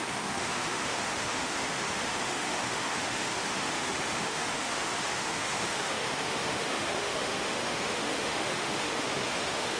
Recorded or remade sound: remade